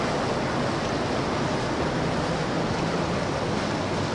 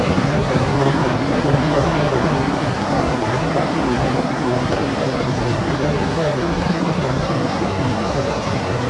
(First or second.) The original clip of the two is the first